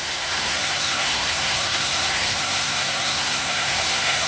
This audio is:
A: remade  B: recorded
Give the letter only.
A